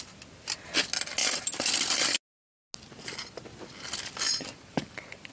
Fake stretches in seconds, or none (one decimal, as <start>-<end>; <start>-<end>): none